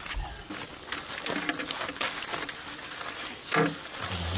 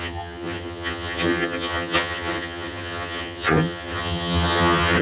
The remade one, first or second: second